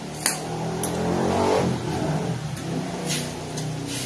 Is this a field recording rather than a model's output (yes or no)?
yes